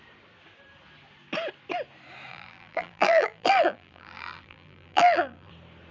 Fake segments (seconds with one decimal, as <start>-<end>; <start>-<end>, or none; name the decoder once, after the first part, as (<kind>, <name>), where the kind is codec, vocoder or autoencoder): 2.3-5.5 (vocoder, BigVGAN v2)